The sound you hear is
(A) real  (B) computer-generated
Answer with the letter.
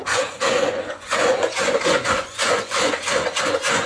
B